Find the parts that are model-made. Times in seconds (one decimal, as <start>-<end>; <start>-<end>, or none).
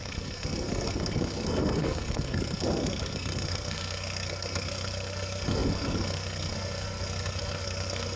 0.0-8.2